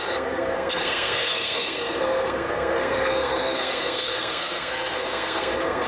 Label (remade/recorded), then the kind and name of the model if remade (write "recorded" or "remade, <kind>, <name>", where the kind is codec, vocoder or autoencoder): remade, codec, SNAC